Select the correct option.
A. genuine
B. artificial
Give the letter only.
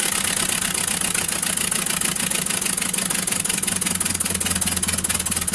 A